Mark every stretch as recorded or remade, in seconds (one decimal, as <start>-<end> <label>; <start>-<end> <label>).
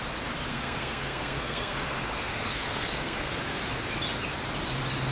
0.0-0.5 recorded; 0.5-3.6 remade; 3.6-5.1 recorded